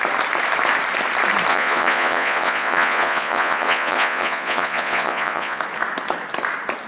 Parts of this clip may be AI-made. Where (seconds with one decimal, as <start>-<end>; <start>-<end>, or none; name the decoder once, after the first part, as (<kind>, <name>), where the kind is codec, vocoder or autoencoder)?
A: 1.5-5.6 (vocoder, Vocos)